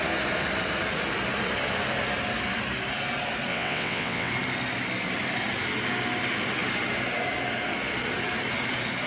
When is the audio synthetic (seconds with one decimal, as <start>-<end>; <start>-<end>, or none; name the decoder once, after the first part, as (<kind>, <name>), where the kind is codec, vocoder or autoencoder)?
3.5-4.3 (vocoder, WaveNeXt)